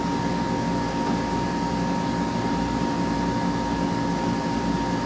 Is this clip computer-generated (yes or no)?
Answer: no